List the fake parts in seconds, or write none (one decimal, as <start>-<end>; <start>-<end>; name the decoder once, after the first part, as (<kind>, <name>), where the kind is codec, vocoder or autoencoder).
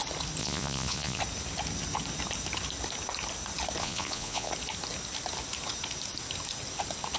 0.4-1.2 (vocoder, Vocos); 3.8-4.5